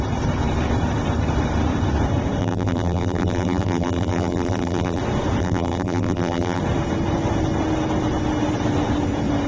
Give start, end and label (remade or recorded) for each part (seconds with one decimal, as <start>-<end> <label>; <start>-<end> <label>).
0.0-2.4 recorded; 2.4-5.0 remade; 5.0-5.4 recorded; 5.4-6.6 remade; 6.6-9.5 recorded